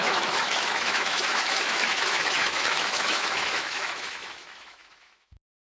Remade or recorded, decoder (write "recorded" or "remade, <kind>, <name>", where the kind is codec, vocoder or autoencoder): remade, autoencoder, DAC-VAE